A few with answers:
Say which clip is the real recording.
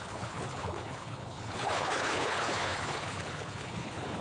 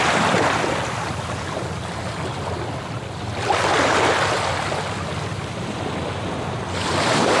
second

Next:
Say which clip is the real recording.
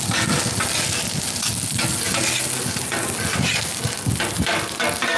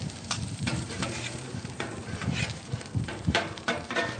first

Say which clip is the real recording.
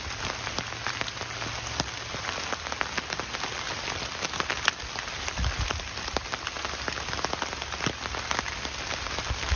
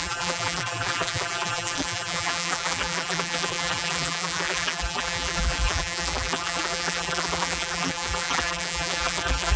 first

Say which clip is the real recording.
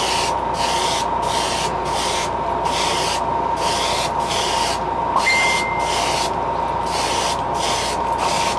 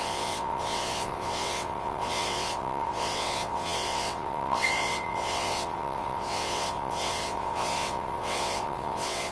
first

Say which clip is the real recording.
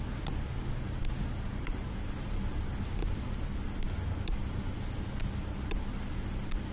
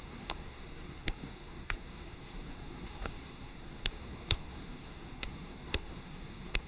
first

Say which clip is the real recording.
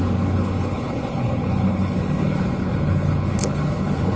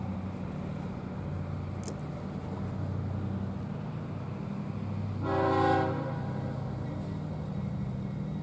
second